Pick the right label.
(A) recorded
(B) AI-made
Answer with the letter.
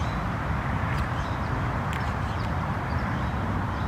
B